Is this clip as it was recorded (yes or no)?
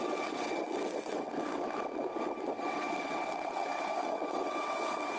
no